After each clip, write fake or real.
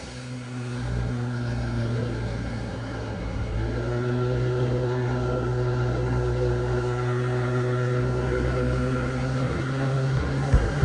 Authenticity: fake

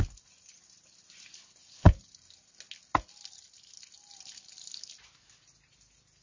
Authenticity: real